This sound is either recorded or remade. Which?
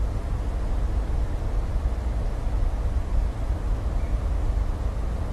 recorded